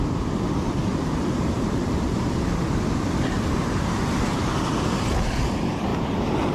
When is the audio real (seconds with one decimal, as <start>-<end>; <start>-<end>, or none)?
0.0-0.9; 2.4-3.6; 4.7-6.5